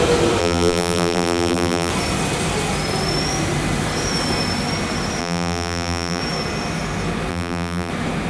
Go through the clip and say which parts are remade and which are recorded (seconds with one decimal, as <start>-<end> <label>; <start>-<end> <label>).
0.0-0.4 recorded; 0.4-1.9 remade; 1.9-5.2 recorded; 5.2-6.2 remade; 6.2-7.3 recorded; 7.3-7.9 remade; 7.9-8.3 recorded